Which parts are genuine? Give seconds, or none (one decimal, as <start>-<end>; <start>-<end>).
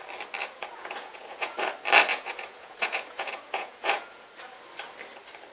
0.0-0.4; 1.7-2.1; 4.3-5.5